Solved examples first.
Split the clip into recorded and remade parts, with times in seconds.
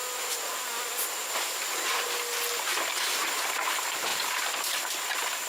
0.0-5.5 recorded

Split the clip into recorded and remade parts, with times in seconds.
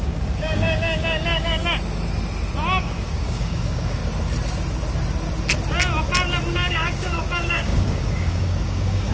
0.0-1.6 remade; 1.6-2.8 recorded; 2.8-4.0 remade; 4.0-6.5 recorded; 6.5-9.1 remade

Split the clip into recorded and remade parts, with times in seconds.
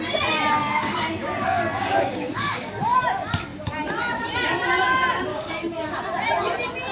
0.0-0.6 recorded; 0.6-2.8 remade; 2.8-5.3 recorded; 5.3-6.0 remade; 6.0-6.9 recorded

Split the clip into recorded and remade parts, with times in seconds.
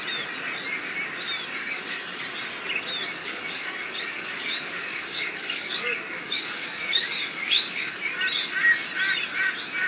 0.0-1.6 recorded; 1.6-2.2 remade; 2.2-3.2 recorded; 3.2-8.0 remade; 8.0-9.9 recorded